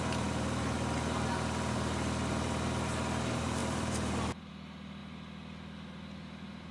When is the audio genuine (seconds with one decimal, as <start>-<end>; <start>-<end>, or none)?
0.0-3.6; 4.5-5.0